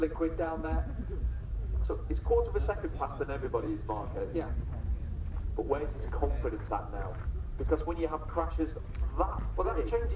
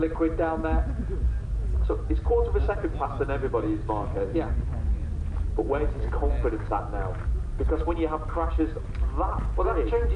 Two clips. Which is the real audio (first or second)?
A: second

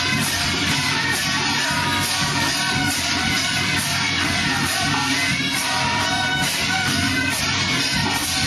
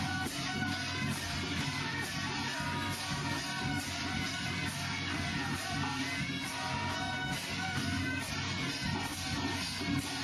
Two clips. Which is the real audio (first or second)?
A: second